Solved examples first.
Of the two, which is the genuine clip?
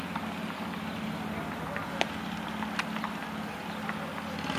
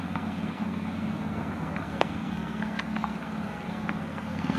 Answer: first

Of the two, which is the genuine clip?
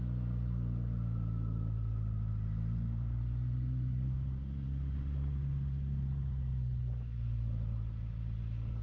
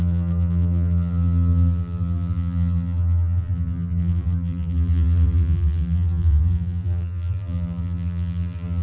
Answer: first